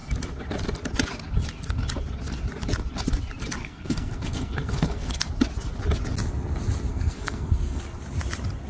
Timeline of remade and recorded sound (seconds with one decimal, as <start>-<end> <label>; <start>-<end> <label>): 0.0-3.6 recorded; 3.6-5.3 remade; 5.3-6.9 recorded; 6.9-7.8 remade; 7.8-8.7 recorded

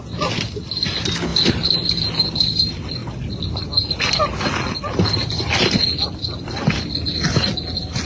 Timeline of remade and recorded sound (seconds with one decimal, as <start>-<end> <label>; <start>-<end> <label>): 0.0-1.3 recorded; 1.3-2.6 remade; 2.6-8.0 recorded

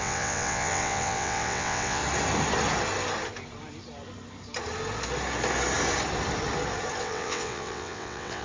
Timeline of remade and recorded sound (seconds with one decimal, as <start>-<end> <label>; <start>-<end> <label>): 0.0-2.0 remade; 2.0-7.0 recorded; 7.0-8.4 remade

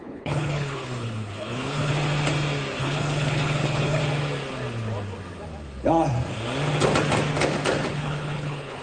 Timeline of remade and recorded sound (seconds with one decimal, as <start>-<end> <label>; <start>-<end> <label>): 0.0-1.9 remade; 1.9-2.8 recorded; 2.8-4.0 remade; 4.0-7.9 recorded; 7.9-8.8 remade